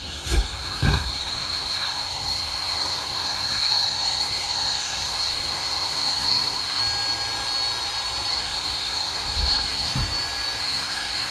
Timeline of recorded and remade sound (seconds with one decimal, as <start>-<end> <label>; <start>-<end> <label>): 0.0-6.8 remade; 6.8-8.3 recorded; 8.3-9.9 remade; 9.9-10.6 recorded; 10.6-11.3 remade